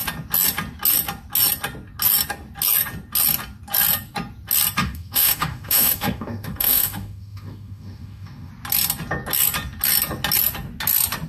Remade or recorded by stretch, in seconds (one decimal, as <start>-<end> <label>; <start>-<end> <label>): 0.0-4.8 recorded; 4.8-8.5 remade; 8.5-11.3 recorded